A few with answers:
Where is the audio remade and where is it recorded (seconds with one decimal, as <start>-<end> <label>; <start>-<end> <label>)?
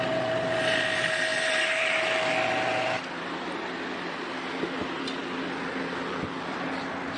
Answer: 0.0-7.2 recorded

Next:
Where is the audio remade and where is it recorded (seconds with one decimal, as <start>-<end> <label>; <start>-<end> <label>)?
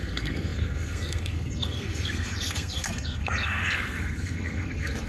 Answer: 0.0-5.1 remade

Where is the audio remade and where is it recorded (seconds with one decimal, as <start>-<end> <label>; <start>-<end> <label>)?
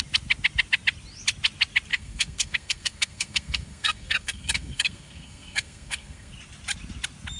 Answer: 0.0-1.9 recorded; 1.9-6.3 remade; 6.3-7.4 recorded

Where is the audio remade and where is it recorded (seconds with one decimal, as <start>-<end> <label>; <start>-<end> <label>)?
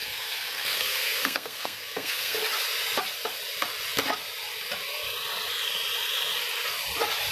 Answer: 0.0-2.4 remade; 2.4-7.3 recorded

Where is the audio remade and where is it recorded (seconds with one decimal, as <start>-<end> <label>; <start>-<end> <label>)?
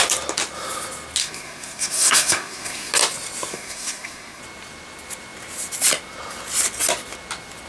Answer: 0.0-1.2 recorded; 1.2-2.9 remade; 2.9-3.5 recorded; 3.5-4.4 remade; 4.4-7.7 recorded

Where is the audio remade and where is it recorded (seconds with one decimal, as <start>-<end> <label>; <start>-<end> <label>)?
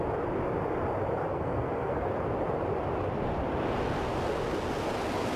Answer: 0.0-1.3 recorded; 1.3-2.1 remade; 2.1-5.4 recorded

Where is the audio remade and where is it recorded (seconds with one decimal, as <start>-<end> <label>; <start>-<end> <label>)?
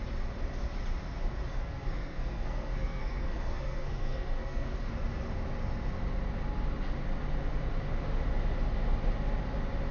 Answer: 0.0-1.5 recorded; 1.5-4.9 remade; 4.9-9.9 recorded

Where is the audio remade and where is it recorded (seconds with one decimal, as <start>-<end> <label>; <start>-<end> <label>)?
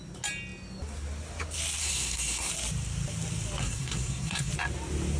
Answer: 0.0-1.8 recorded; 1.8-2.5 remade; 2.5-3.6 recorded; 3.6-4.5 remade; 4.5-5.2 recorded